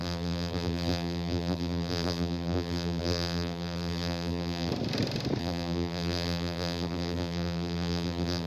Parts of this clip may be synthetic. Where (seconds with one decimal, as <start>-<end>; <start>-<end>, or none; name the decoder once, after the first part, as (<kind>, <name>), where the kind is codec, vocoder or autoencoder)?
0.0-4.7 (vocoder, BigVGAN v2); 5.4-8.5